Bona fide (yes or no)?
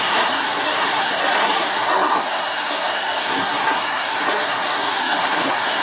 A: no